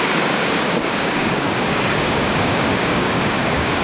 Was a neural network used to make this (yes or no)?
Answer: yes